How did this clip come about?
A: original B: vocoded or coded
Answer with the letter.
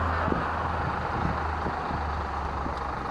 A